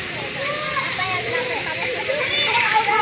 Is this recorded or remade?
remade